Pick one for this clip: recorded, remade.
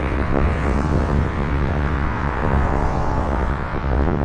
remade